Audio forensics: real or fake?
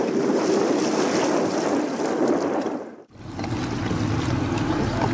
real